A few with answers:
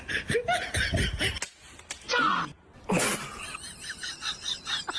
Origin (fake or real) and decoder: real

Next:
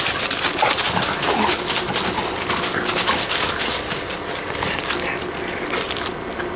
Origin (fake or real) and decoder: real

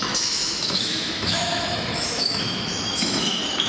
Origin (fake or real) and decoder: fake, autoencoder, DAC-VAE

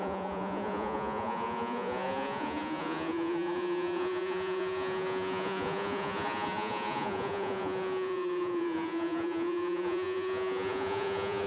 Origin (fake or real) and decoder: fake, vocoder, Vocos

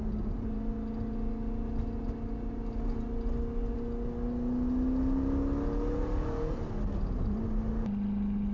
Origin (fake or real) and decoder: real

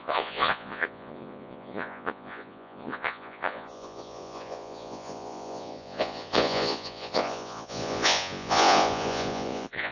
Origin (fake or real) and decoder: fake, vocoder, Vocos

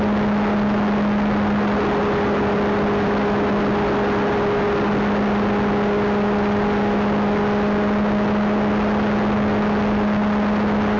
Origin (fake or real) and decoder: real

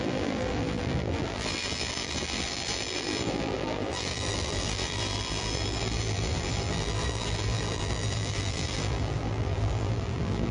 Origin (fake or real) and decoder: fake, vocoder, BigVGAN v2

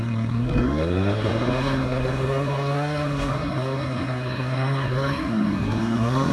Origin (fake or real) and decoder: fake, codec, SNAC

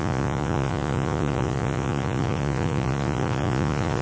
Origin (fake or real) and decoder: fake, vocoder, Vocos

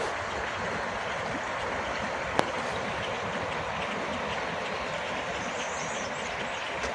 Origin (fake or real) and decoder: real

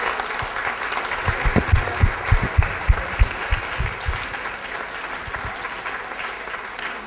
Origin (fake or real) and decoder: real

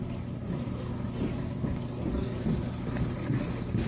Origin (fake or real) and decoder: real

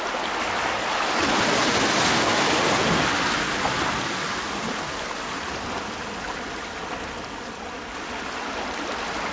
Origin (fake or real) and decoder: real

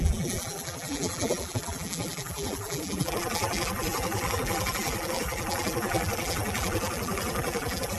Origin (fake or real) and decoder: fake, vocoder, BigVGAN v2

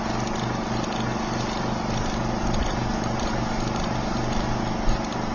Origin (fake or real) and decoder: real